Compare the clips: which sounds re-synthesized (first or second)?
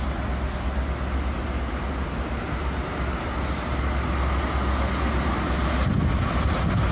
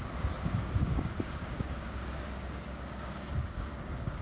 second